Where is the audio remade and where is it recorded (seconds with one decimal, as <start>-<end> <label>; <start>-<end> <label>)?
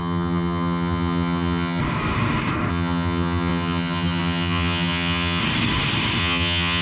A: 0.0-1.8 remade; 1.8-2.7 recorded; 2.7-5.4 remade; 5.4-6.2 recorded; 6.2-6.8 remade